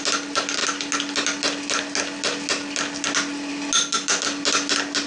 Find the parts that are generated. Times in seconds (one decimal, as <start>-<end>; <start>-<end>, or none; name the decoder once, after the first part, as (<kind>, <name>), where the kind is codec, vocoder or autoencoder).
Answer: none

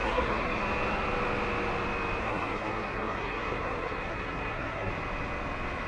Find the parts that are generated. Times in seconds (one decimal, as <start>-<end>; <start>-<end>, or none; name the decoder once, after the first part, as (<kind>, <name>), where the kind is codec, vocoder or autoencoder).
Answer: 0.0-0.6 (codec, SNAC); 2.2-4.9

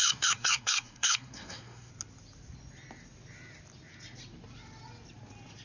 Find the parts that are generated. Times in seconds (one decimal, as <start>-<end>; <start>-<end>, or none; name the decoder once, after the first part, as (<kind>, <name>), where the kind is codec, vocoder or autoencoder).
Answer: 0.0-1.9 (codec, SNAC)

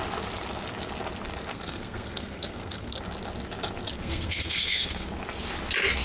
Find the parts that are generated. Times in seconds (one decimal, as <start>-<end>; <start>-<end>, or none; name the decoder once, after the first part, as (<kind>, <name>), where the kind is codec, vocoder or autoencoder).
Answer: 1.5-3.0 (codec, SNAC); 3.9-5.1

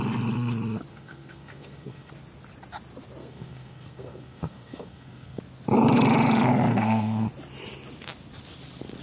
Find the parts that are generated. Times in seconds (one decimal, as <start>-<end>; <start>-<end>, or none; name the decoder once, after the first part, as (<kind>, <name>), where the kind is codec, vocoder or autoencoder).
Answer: 0.9-2.1 (codec, SNAC); 3.2-5.4; 6.7-7.3

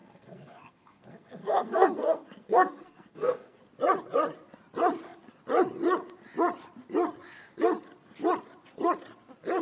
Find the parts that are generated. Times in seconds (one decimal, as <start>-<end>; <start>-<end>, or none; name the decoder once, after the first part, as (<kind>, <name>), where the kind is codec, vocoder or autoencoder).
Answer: 0.0-3.6 (codec, SNAC)

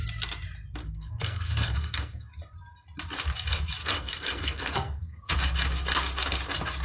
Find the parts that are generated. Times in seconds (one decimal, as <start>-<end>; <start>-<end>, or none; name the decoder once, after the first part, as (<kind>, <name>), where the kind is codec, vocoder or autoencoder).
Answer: 0.8-2.3 (codec, SNAC); 3.8-5.3